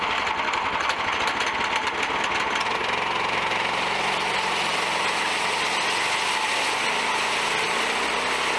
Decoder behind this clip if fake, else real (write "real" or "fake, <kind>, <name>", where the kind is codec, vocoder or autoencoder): real